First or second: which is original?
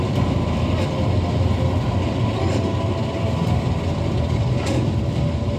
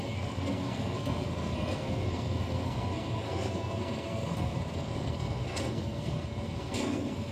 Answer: first